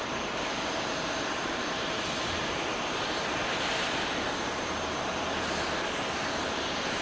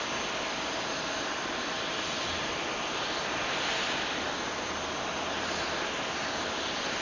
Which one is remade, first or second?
first